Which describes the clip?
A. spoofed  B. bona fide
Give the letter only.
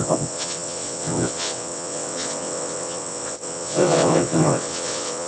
A